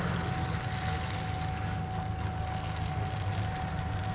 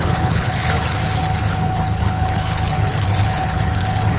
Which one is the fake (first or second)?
second